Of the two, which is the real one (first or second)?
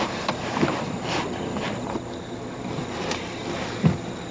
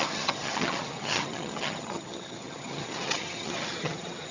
first